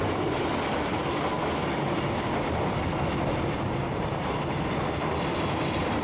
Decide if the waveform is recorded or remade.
recorded